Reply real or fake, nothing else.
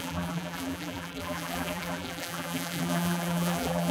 fake